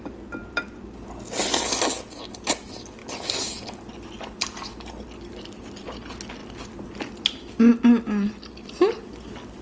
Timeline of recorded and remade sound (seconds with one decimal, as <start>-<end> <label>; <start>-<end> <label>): 0.0-9.6 recorded